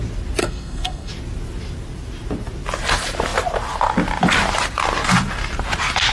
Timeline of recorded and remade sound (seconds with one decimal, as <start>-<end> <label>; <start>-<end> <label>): 0.0-0.4 recorded; 0.4-1.1 remade; 1.1-6.1 recorded